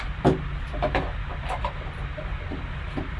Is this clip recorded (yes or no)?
yes